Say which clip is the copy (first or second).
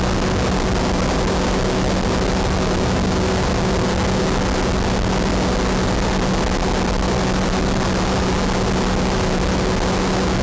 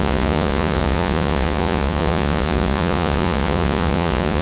second